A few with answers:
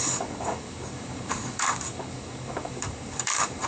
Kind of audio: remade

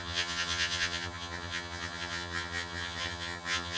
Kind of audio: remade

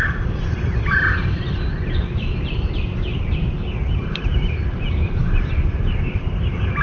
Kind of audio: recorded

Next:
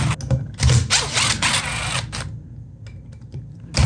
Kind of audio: recorded